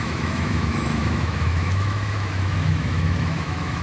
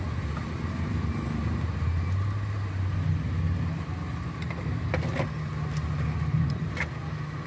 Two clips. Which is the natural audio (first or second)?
second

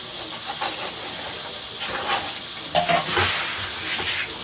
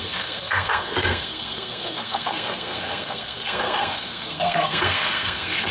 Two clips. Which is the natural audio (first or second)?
first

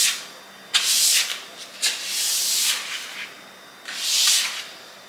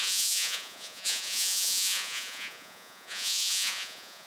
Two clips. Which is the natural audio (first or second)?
first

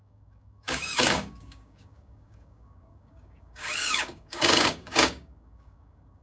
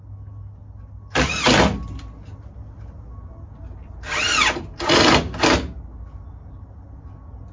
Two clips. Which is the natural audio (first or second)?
second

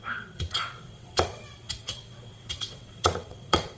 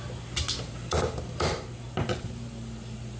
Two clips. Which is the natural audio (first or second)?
second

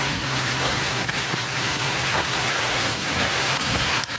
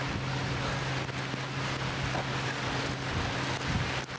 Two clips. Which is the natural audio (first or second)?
second